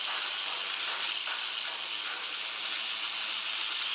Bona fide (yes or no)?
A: yes